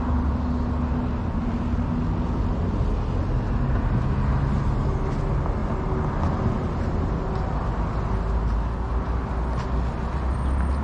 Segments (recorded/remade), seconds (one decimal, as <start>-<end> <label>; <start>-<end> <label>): 0.0-10.8 recorded